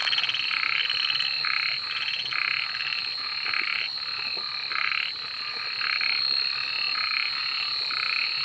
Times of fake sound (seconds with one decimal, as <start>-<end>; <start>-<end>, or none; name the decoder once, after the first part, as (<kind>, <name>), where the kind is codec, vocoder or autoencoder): none